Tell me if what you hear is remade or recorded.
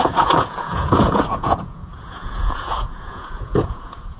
remade